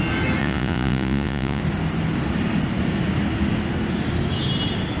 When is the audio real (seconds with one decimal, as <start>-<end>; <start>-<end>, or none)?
0.0-0.4; 1.6-5.0